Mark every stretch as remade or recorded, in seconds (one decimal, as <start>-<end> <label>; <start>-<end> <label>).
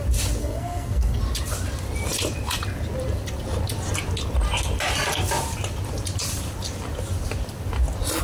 0.0-0.4 recorded; 0.4-1.2 remade; 1.2-8.2 recorded